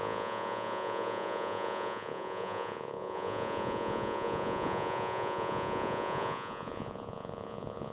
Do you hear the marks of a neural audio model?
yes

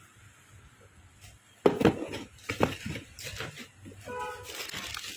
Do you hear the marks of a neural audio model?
no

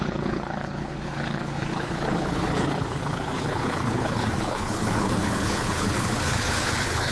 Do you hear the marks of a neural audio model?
yes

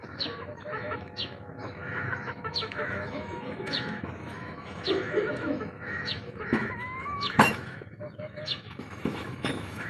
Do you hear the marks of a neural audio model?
yes